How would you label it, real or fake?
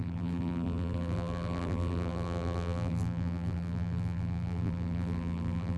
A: fake